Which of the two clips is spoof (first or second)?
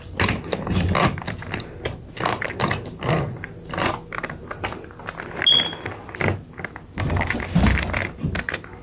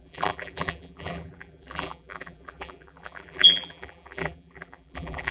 second